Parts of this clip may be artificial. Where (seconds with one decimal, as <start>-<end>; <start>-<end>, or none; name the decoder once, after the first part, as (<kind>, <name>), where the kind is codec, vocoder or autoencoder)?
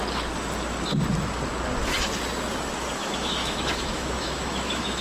3.0-5.0 (autoencoder, DAC-VAE)